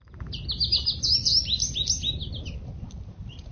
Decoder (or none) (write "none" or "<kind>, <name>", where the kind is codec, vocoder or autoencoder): none